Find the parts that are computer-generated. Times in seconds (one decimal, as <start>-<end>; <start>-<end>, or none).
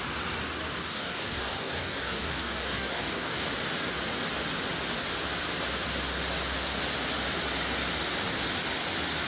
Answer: 0.8-3.5